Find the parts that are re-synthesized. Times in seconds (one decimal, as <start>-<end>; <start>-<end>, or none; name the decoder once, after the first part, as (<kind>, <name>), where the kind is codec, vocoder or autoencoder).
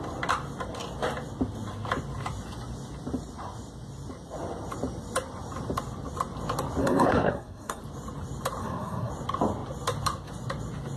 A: 6.8-7.8 (codec, SNAC); 8.6-9.1